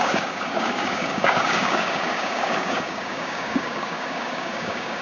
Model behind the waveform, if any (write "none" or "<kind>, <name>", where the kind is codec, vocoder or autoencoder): codec, DAC